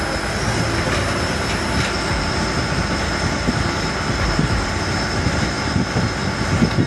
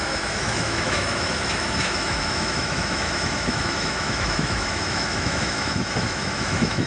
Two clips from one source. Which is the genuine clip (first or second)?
first